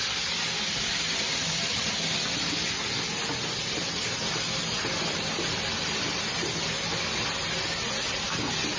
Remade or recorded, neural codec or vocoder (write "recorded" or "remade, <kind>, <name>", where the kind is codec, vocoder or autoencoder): recorded